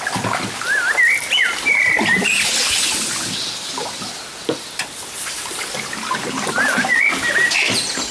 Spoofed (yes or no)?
no